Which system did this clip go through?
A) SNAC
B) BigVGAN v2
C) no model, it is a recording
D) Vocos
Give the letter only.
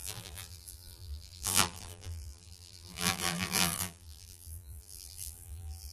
B